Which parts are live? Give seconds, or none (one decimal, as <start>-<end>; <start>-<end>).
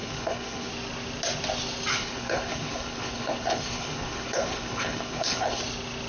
0.7-1.9; 5.6-6.1